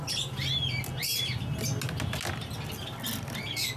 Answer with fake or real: real